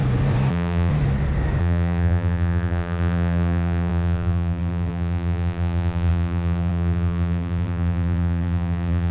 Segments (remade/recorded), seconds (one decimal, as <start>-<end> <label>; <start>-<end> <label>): 0.0-0.5 recorded; 0.5-0.9 remade; 0.9-1.6 recorded; 1.6-9.1 remade